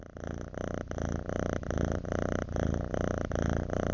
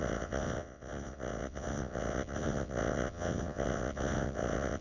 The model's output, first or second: second